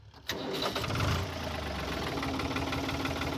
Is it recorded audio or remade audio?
recorded